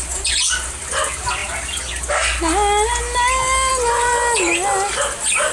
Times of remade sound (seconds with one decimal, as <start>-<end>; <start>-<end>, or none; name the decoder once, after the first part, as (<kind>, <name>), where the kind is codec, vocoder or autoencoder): none